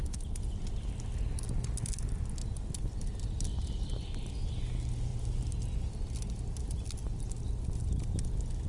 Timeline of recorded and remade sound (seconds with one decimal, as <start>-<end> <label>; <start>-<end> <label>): 0.0-8.7 recorded